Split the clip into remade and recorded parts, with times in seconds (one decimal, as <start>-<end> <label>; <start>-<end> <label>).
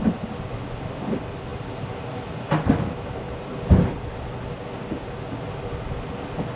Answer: 0.0-4.8 recorded; 4.8-5.4 remade; 5.4-6.6 recorded